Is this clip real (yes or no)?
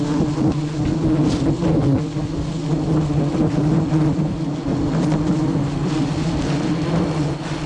yes